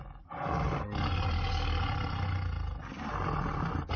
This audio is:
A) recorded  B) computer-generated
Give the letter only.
A